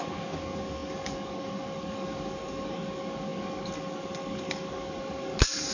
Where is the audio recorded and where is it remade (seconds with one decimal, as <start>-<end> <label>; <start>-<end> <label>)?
0.0-5.7 remade